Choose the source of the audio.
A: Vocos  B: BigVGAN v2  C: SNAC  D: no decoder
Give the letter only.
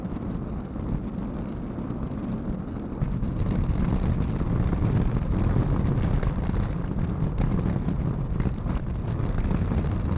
D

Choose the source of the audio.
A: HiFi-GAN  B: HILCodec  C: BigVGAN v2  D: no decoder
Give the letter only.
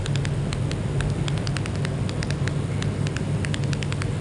D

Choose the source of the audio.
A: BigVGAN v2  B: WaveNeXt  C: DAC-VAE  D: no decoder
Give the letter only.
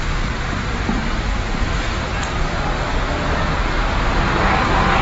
A